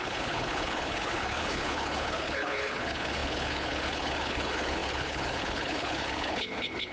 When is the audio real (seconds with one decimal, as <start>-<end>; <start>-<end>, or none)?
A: none